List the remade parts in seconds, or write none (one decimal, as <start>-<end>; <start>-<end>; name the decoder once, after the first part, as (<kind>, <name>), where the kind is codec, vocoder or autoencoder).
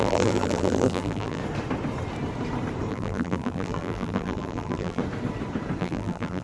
0.0-1.4 (vocoder, BigVGAN v2); 2.9-5.0; 5.8-6.4